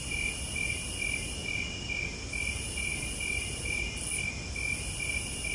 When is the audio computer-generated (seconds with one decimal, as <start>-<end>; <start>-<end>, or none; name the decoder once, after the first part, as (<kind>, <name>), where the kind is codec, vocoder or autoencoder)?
none